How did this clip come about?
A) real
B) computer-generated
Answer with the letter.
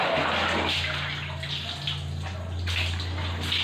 A